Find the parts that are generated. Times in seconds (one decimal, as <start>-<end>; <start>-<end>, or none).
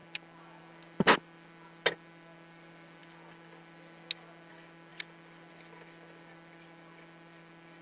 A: none